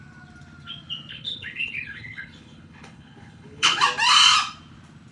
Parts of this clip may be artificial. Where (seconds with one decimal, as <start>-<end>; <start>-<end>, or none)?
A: 1.1-3.8